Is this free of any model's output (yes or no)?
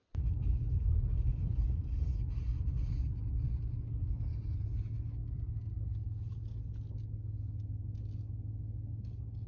yes